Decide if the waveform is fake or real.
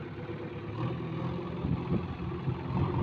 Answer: real